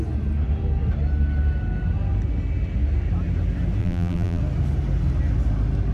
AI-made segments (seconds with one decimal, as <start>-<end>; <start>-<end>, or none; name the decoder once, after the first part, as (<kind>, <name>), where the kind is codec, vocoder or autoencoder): 3.8-4.4 (vocoder, BigVGAN v2)